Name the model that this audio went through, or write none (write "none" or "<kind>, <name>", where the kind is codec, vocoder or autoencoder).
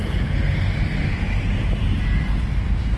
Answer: none